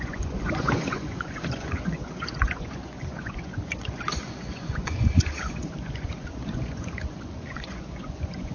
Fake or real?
fake